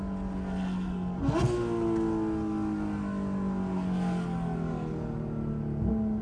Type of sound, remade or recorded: recorded